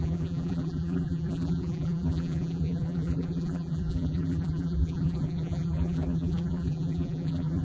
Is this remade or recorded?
remade